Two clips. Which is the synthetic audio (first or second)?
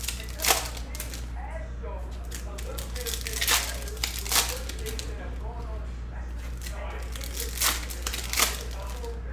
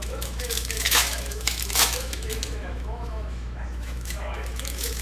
second